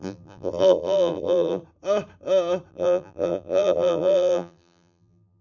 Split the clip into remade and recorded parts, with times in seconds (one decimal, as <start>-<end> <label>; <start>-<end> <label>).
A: 0.0-1.6 remade; 1.6-2.7 recorded; 2.7-5.4 remade